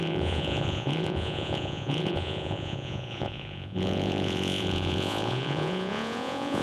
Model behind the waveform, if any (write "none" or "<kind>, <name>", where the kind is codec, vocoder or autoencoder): vocoder, Vocos